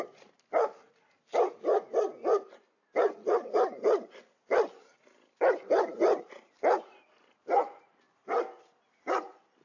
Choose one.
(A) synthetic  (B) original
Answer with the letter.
B